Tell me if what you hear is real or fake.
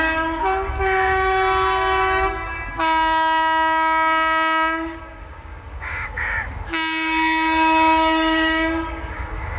fake